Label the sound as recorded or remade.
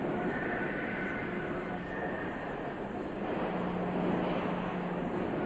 recorded